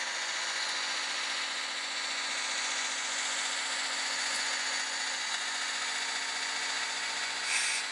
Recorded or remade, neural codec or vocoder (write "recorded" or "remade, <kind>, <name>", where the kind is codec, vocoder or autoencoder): remade, vocoder, Vocos